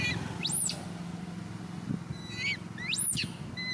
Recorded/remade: recorded